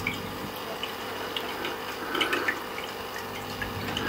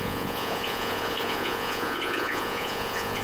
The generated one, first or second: second